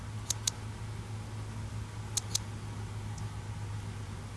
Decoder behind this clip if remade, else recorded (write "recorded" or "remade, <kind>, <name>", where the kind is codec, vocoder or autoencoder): recorded